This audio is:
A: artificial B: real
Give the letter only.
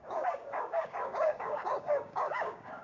A